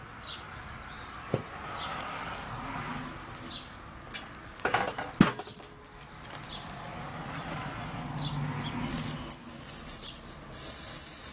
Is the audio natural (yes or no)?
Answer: yes